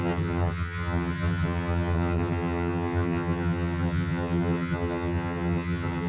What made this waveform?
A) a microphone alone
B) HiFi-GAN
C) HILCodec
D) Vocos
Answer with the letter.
B